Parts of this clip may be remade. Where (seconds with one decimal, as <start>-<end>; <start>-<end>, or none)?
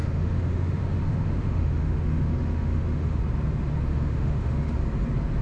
0.0-3.2; 3.9-4.8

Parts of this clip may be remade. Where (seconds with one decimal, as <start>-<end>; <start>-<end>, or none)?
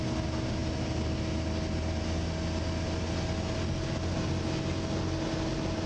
none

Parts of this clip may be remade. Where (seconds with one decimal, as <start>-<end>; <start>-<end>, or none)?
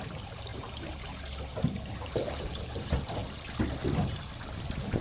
0.0-3.2; 4.6-5.0